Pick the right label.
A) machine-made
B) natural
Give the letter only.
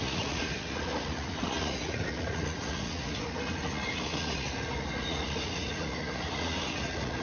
A